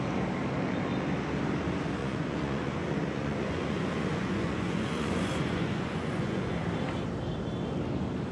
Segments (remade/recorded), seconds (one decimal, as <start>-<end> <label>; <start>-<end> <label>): 0.0-2.0 recorded; 2.0-6.5 remade; 6.5-8.3 recorded